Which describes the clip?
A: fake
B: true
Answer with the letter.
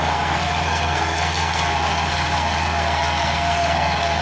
A